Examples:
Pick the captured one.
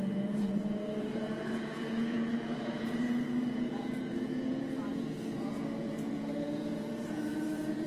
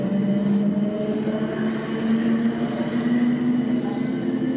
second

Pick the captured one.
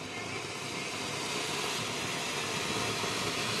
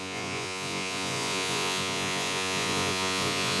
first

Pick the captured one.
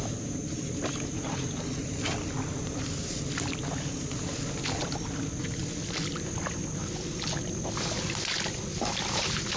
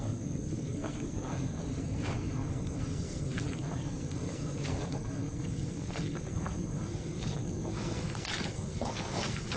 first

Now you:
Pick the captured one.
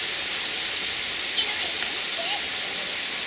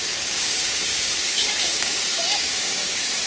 first